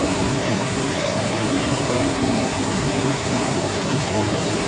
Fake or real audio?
fake